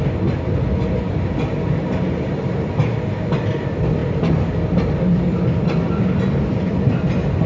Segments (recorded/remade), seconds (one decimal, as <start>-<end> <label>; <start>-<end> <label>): 0.0-1.5 recorded; 1.5-2.3 remade; 2.3-7.5 recorded